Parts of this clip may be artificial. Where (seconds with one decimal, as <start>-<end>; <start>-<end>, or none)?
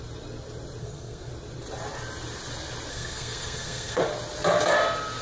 0.8-1.3; 2.9-4.0